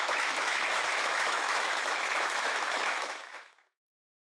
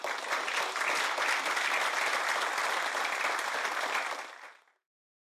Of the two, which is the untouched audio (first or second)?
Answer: second